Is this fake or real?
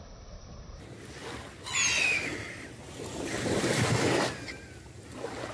real